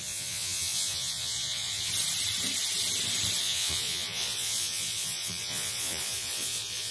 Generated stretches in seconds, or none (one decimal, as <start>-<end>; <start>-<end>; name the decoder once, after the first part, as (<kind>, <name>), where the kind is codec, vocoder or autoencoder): 0.0-1.9 (vocoder, Vocos); 3.4-6.9